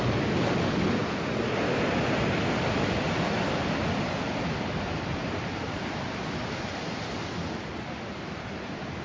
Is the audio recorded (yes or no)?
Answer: yes